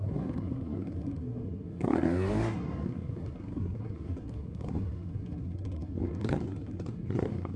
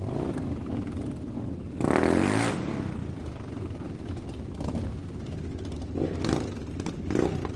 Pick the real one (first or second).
second